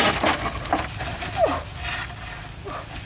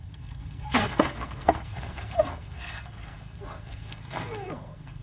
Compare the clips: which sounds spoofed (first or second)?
second